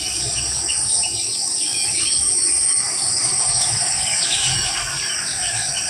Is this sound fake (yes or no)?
yes